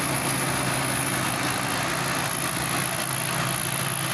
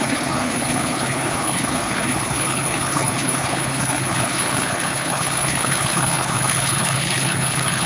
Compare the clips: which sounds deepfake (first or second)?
second